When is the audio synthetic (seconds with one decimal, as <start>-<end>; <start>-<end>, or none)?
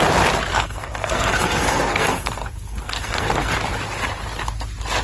0.5-3.5